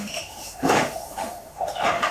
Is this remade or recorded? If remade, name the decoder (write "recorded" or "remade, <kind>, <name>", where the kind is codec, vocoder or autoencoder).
remade, autoencoder, DAC-VAE